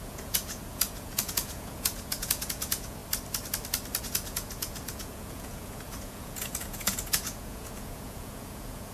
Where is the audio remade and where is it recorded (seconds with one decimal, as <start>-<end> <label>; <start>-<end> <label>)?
0.0-3.0 remade; 3.0-4.0 recorded; 4.0-8.9 remade